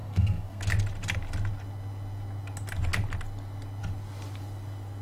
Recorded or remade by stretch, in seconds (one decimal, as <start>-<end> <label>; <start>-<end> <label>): 0.0-0.6 remade; 0.6-5.0 recorded

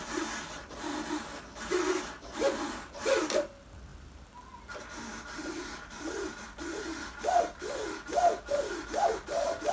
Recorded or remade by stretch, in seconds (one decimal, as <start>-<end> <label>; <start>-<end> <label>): 0.0-9.7 recorded

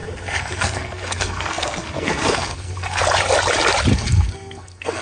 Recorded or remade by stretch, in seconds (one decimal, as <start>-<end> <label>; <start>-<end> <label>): 0.0-3.0 remade; 3.0-3.9 recorded; 3.9-5.0 remade

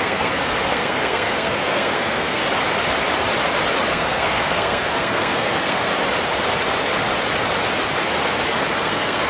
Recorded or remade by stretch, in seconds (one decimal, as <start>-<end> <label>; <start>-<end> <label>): 0.0-2.4 remade; 2.4-3.9 recorded; 3.9-5.9 remade; 5.9-8.8 recorded; 8.8-9.3 remade

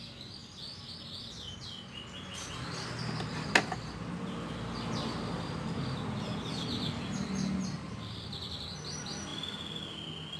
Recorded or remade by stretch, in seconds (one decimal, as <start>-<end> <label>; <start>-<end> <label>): 0.0-10.4 recorded

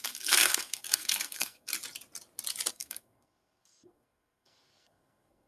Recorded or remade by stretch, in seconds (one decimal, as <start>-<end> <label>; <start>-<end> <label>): 0.0-1.7 remade; 1.7-2.7 recorded; 2.7-5.5 remade

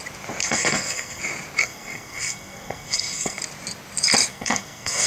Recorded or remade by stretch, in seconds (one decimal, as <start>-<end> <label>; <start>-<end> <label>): 0.0-0.4 recorded; 0.4-1.2 remade; 1.2-1.6 recorded; 1.6-3.4 remade; 3.4-4.3 recorded; 4.3-5.1 remade

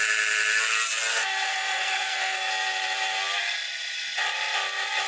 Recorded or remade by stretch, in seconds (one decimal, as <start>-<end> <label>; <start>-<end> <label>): 0.0-1.1 recorded; 1.1-2.5 remade; 2.5-5.1 recorded